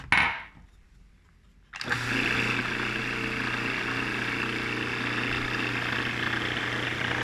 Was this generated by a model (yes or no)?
no